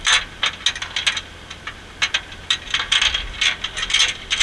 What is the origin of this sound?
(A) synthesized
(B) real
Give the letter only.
B